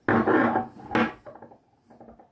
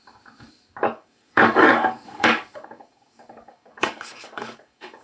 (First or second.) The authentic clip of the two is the first